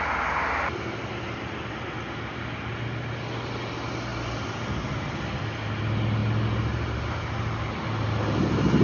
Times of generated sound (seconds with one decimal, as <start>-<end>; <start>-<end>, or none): none